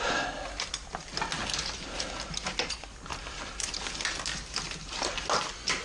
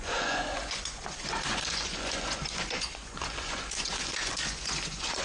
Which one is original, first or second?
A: first